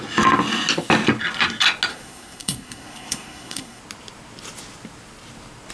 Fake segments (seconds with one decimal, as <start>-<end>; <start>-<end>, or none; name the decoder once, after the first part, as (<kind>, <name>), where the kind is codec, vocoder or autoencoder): 1.9-3.8 (codec, SNAC)

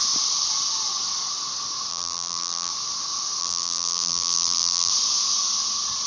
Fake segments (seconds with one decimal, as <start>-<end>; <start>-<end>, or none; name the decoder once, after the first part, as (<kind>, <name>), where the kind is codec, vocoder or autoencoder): 1.9-2.7 (vocoder, BigVGAN v2); 3.4-4.9

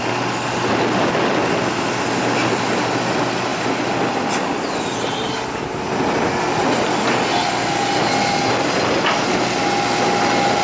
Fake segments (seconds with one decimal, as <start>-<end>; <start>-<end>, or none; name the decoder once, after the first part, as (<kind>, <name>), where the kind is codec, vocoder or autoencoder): none

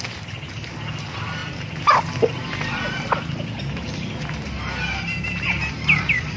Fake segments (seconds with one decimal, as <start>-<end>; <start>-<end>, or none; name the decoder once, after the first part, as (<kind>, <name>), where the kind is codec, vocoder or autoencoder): none